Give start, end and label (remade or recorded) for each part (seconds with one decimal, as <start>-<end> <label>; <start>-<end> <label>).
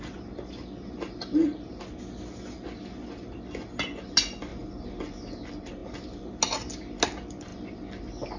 0.0-8.4 recorded